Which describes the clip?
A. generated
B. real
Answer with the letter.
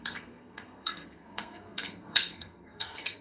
A